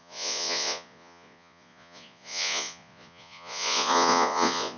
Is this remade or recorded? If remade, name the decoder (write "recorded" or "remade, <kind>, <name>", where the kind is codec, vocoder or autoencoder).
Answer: remade, vocoder, Vocos